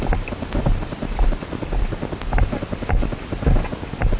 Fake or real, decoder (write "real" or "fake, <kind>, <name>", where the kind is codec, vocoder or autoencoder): real